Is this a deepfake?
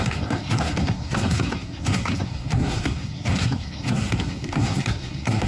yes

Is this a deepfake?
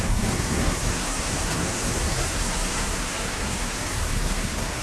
yes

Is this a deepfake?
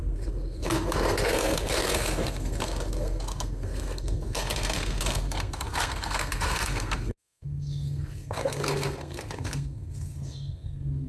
yes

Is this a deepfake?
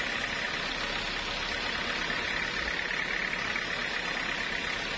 no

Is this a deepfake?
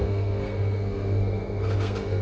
yes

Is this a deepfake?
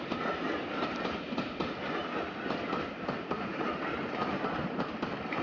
no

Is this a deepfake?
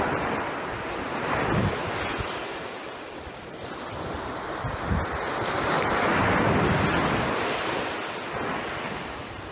no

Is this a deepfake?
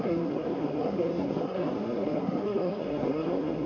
yes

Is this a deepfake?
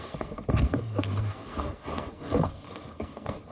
yes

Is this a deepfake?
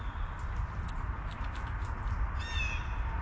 no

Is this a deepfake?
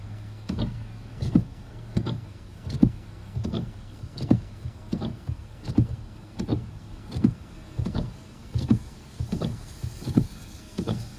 yes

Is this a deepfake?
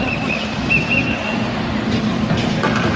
no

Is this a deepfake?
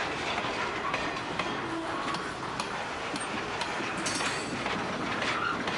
no